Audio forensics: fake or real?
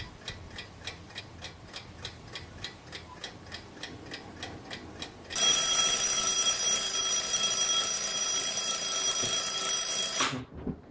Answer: real